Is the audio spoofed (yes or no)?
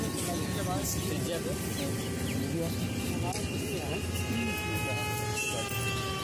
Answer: no